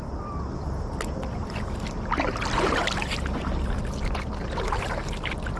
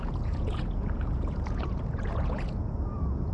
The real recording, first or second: first